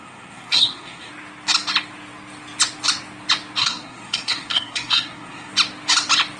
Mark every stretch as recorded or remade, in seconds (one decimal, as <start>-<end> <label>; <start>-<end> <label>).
0.0-1.1 remade; 1.1-3.6 recorded; 3.6-5.5 remade; 5.5-6.4 recorded